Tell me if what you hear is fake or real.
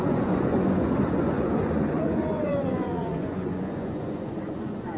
fake